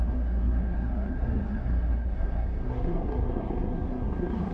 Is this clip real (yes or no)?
no